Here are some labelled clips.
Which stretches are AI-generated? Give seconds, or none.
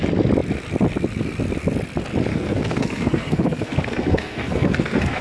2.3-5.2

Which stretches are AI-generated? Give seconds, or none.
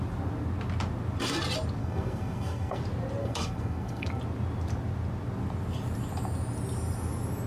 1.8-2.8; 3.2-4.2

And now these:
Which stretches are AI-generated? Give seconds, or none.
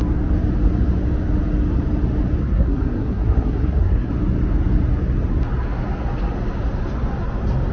2.4-4.1